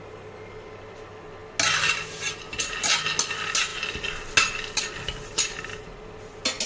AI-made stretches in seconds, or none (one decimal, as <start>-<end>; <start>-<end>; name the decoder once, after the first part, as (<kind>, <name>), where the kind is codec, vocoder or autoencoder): none